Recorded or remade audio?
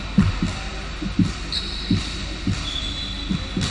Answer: recorded